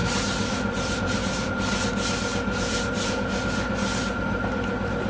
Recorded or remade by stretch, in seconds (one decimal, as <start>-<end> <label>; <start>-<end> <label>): 0.0-1.5 remade; 1.5-2.3 recorded; 2.3-3.3 remade; 3.3-5.1 recorded